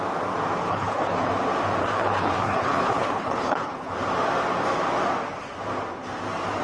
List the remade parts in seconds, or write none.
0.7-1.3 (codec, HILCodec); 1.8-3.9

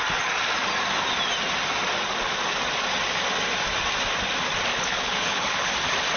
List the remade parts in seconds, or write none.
4.7-5.7 (codec, HILCodec)

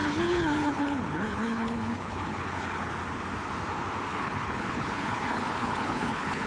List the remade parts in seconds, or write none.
0.0-2.9 (codec, HILCodec); 4.1-6.5